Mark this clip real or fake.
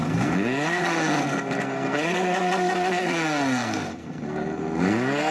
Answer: fake